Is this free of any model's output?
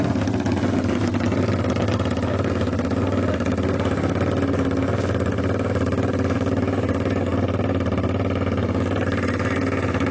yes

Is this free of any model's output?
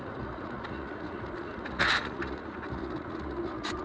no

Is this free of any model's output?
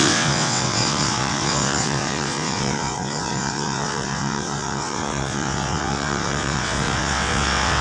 no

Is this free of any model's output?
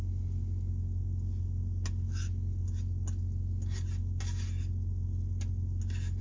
yes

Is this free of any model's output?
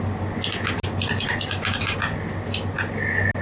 yes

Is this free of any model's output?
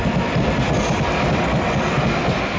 yes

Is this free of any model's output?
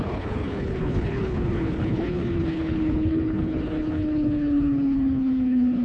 no